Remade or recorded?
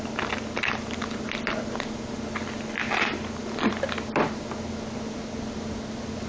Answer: recorded